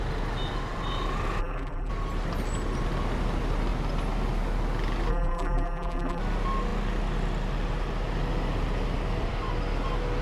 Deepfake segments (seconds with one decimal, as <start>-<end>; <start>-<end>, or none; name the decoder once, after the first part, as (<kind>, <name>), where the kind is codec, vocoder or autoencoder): 1.4-1.9 (vocoder, BigVGAN v2); 5.1-6.2